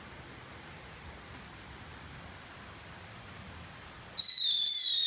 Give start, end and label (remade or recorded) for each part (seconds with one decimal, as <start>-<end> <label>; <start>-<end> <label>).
0.0-5.1 recorded